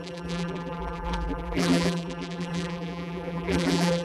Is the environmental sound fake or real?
fake